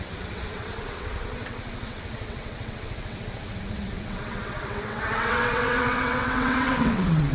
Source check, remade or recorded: remade